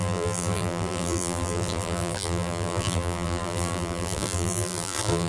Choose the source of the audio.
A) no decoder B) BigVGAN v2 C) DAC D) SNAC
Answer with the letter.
B